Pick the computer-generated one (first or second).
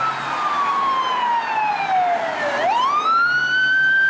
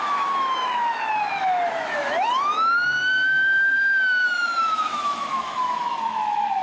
second